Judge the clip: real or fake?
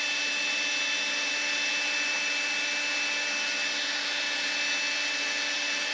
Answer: real